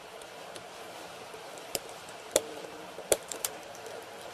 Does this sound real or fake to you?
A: fake